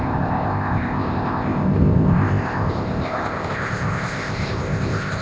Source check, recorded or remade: remade